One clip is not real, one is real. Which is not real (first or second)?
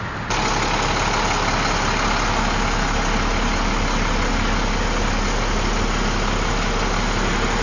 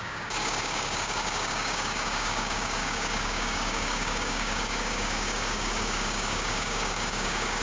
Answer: second